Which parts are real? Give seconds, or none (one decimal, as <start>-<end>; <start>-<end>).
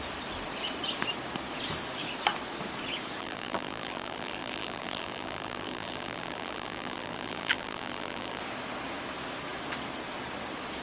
0.0-3.2; 8.4-10.8